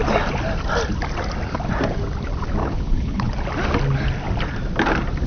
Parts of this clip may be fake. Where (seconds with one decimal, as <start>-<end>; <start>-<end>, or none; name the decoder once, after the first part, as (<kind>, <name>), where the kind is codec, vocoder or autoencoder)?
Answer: 2.6-3.3 (codec, HILCodec)